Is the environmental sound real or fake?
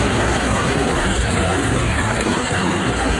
fake